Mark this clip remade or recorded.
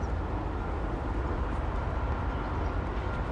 recorded